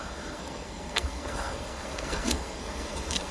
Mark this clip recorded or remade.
remade